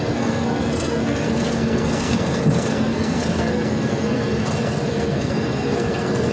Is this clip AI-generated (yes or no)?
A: yes